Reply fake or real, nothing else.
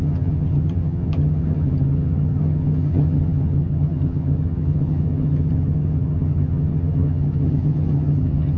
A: fake